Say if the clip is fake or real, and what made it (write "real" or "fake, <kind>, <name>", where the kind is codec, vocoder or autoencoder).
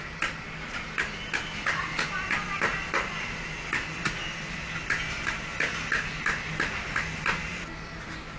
real